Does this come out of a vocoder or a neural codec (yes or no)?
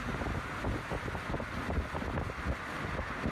no